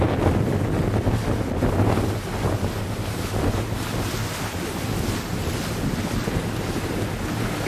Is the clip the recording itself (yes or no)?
yes